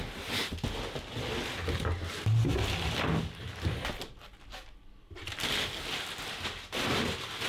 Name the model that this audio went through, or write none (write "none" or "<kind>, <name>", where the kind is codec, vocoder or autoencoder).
none